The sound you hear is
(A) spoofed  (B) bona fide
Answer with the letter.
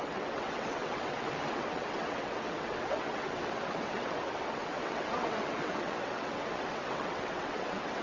A